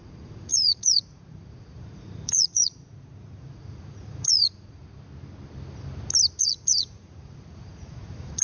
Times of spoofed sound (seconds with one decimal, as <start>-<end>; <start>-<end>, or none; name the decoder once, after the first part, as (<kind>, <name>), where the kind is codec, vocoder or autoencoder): 0.0-4.8 (vocoder, Vocos); 6.4-8.4